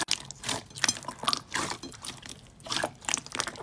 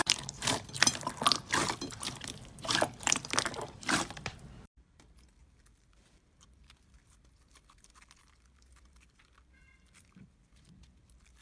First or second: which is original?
first